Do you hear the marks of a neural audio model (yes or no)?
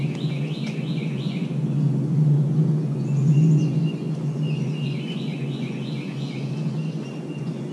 yes